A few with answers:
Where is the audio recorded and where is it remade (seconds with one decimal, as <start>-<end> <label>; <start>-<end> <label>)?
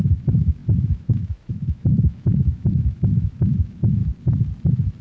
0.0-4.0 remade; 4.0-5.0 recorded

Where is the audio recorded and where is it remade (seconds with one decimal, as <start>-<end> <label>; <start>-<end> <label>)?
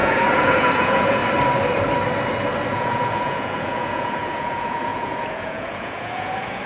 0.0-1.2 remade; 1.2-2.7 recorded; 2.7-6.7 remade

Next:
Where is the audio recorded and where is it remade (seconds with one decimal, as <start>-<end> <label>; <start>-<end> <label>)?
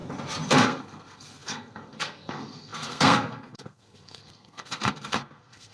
0.0-0.5 recorded; 0.5-5.7 remade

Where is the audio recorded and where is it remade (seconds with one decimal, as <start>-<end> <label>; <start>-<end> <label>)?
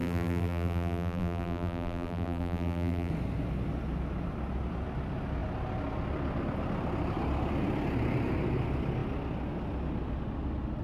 0.0-3.1 remade; 3.1-10.8 recorded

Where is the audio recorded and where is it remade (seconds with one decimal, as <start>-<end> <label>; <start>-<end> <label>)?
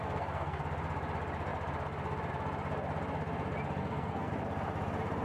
0.0-0.6 remade; 0.6-3.8 recorded; 3.8-4.3 remade; 4.3-5.2 recorded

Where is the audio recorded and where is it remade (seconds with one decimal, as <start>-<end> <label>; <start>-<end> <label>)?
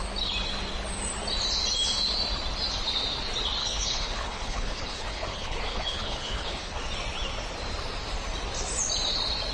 0.0-3.6 recorded; 3.6-6.8 remade; 6.8-9.5 recorded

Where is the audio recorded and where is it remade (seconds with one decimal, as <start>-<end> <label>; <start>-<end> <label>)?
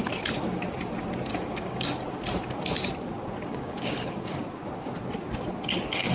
0.0-1.3 recorded; 1.3-1.9 remade; 1.9-3.5 recorded; 3.5-4.4 remade; 4.4-6.1 recorded